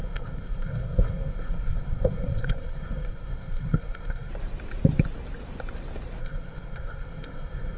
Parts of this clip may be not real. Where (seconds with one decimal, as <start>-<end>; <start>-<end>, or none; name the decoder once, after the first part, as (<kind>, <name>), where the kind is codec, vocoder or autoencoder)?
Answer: 0.0-4.3 (codec, SNAC); 6.2-7.8